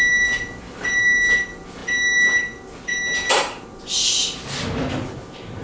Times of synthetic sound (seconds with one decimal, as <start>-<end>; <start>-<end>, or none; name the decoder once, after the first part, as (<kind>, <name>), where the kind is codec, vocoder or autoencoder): none